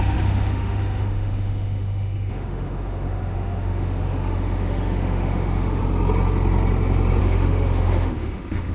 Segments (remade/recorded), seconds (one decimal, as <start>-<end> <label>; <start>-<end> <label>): 0.0-5.8 remade; 5.8-7.2 recorded; 7.2-8.7 remade